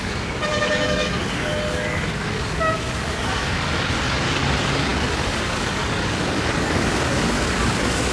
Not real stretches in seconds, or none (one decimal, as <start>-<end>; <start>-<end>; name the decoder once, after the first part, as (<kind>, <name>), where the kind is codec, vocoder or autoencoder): 0.0-8.1 (codec, DAC)